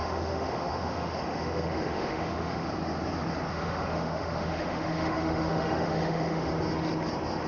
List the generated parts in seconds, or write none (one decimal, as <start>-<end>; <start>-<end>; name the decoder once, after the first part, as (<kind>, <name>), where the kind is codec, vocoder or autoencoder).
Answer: 0.0-2.7 (autoencoder, DAC-VAE); 3.5-6.5